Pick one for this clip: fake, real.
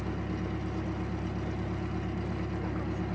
real